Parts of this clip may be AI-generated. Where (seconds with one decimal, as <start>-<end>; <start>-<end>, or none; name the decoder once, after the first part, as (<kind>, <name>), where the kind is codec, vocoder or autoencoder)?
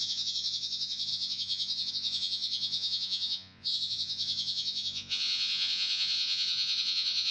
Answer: 0.0-7.3 (vocoder, Vocos)